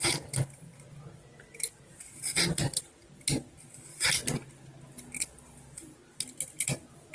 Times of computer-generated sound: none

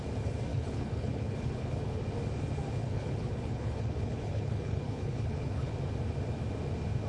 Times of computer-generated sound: 0.5-2.0 (codec, HILCodec); 2.8-5.7

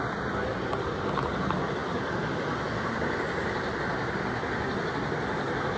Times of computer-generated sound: none